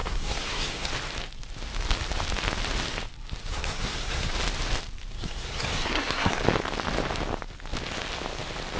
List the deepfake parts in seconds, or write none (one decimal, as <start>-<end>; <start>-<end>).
0.0-0.9; 3.5-4.3; 5.1-6.4